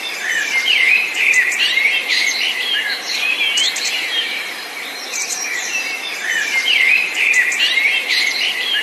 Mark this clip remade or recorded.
remade